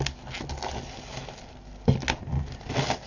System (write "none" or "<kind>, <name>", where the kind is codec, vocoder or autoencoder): none